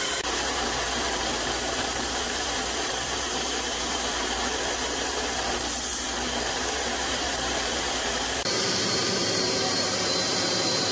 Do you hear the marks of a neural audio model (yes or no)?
yes